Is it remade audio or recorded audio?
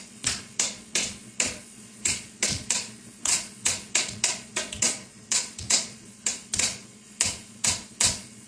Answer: remade